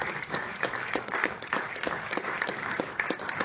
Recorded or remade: remade